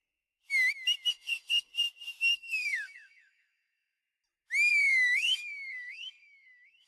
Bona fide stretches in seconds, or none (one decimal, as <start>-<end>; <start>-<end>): 0.0-1.1; 1.7-2.3; 4.0-4.7